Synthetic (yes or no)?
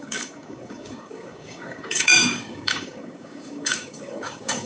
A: yes